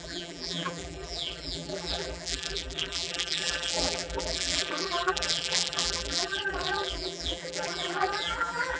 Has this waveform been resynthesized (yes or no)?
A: yes